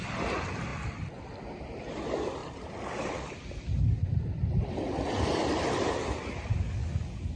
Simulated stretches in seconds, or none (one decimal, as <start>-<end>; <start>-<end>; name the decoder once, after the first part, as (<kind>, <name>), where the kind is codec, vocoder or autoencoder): 2.4-5.9 (vocoder, BigVGAN v2)

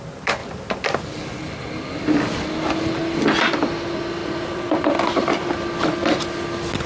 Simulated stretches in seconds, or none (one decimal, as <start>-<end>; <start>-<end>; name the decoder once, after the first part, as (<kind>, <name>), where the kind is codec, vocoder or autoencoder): 4.2-5.5 (vocoder, BigVGAN v2)

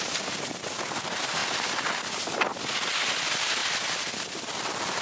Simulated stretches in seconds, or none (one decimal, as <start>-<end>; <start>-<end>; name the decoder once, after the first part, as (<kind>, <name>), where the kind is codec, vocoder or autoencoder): 3.6-5.0 (vocoder, BigVGAN v2)

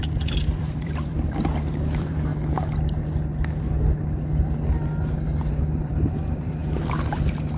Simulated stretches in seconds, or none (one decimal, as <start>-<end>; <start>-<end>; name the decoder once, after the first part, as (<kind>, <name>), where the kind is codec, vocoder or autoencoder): 0.0-2.3 (vocoder, BigVGAN v2); 5.8-7.6

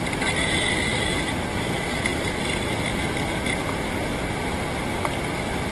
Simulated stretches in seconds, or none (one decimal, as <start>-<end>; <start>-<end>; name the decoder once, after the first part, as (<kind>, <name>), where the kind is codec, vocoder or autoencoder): none

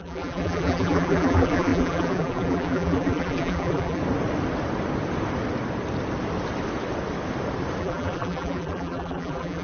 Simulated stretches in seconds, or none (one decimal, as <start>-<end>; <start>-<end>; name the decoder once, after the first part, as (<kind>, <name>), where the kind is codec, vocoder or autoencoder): 0.0-4.0 (vocoder, BigVGAN v2); 7.8-9.6

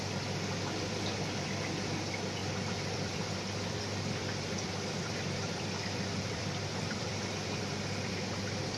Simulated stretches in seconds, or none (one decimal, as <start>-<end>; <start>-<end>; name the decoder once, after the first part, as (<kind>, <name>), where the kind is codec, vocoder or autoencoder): 2.4-7.6 (vocoder, BigVGAN v2)

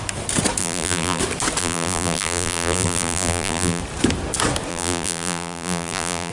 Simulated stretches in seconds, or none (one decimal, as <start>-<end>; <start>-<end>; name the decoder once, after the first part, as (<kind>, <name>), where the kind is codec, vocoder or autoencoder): 0.6-1.2 (vocoder, BigVGAN v2); 1.6-3.8; 4.7-6.3